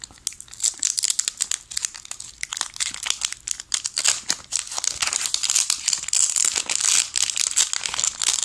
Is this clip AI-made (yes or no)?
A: no